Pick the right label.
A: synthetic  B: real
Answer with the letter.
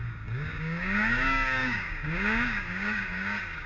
A